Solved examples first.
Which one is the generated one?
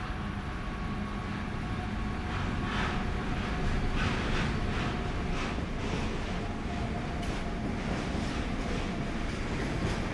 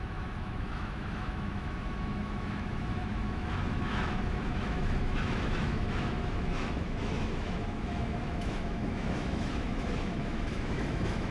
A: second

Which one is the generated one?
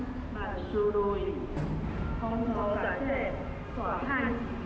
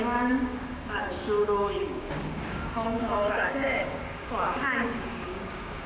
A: second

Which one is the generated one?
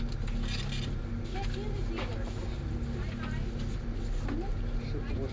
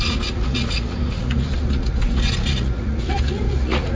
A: second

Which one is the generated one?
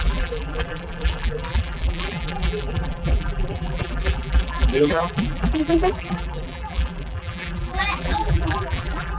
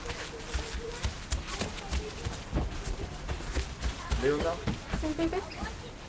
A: first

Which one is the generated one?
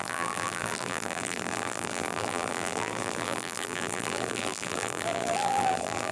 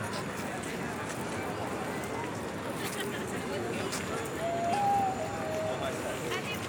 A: first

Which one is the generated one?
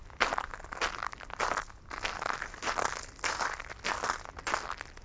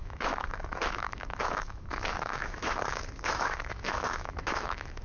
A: second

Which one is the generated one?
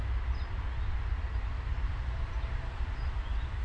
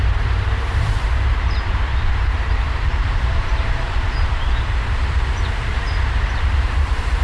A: second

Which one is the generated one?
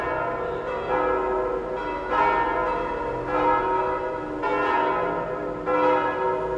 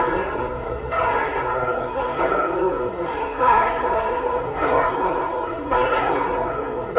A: second